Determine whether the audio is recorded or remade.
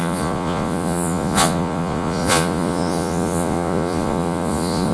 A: remade